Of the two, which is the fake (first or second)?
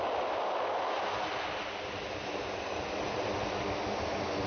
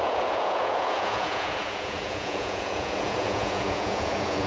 second